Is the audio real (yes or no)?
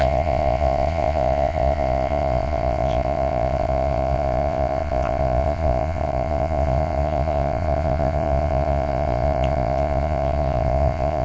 no